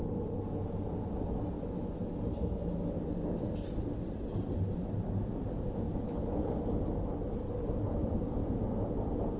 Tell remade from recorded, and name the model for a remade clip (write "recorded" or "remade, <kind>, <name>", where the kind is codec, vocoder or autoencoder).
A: recorded